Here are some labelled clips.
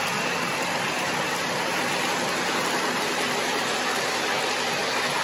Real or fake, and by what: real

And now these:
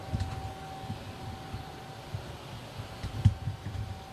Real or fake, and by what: real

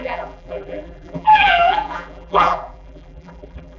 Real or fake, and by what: fake, vocoder, BigVGAN v2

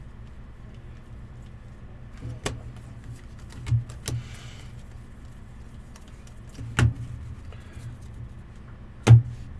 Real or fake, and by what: real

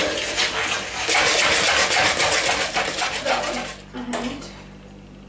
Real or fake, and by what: real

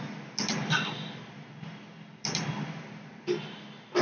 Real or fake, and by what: real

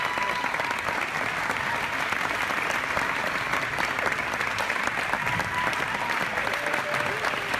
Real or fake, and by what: real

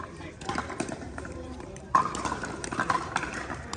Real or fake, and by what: fake, vocoder, BigVGAN v2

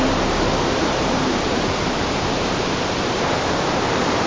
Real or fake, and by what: fake, vocoder, BigVGAN v2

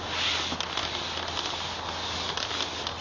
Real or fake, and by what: real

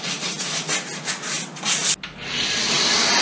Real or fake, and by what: real